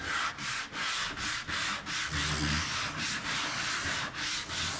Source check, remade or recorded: recorded